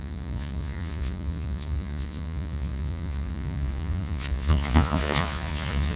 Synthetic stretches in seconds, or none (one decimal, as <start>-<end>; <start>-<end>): 0.0-6.0